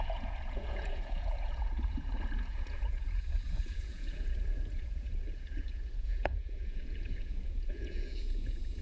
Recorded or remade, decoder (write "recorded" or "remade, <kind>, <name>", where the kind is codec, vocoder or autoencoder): remade, vocoder, Vocos